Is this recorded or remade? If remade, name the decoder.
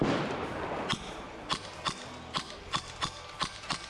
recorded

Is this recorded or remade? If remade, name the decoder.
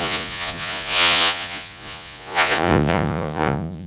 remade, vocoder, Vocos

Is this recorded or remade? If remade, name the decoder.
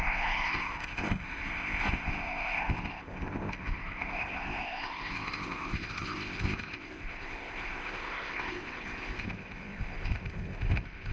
remade, codec, ZipCodec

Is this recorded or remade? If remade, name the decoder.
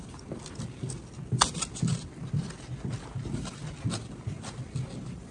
recorded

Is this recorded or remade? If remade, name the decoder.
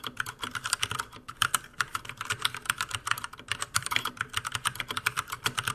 recorded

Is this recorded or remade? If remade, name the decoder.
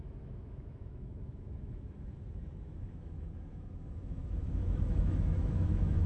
remade, autoencoder, DAC-VAE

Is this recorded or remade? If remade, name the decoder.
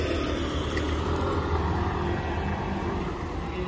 recorded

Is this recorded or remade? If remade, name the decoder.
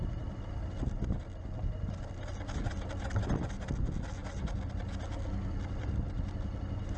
recorded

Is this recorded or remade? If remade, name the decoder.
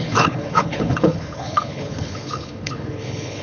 remade, codec, HILCodec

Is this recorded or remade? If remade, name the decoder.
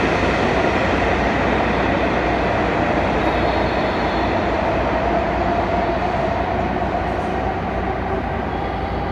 recorded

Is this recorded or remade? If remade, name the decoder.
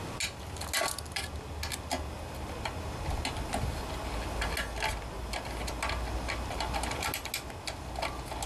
recorded